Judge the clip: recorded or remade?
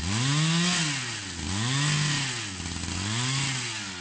recorded